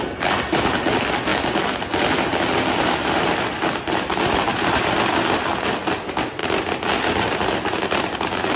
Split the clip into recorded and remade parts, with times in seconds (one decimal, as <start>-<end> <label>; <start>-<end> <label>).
0.0-1.3 recorded; 1.3-4.2 remade; 4.2-8.6 recorded